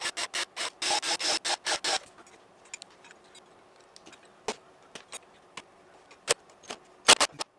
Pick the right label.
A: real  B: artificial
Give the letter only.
A